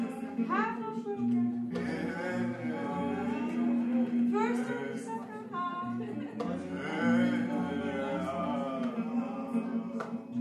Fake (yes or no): no